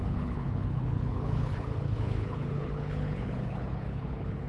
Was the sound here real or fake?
fake